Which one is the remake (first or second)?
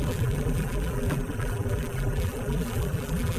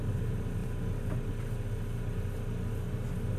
first